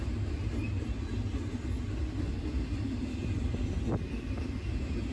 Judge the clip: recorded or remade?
recorded